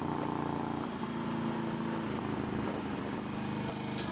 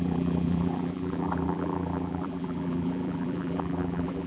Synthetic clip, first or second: second